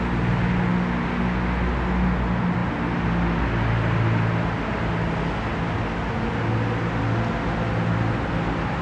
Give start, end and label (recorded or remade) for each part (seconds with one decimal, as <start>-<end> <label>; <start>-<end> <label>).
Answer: 0.0-8.8 recorded